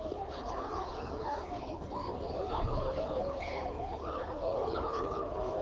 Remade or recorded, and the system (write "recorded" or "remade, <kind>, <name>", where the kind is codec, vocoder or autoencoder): remade, codec, HILCodec